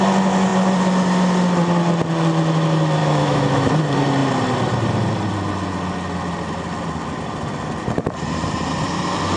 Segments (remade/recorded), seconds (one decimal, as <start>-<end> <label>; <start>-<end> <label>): 0.0-3.0 recorded; 3.0-3.7 remade; 3.7-9.4 recorded